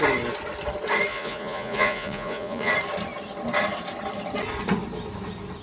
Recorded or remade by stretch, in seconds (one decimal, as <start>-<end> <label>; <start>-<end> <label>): 0.0-1.1 recorded; 1.1-2.7 remade; 2.7-5.6 recorded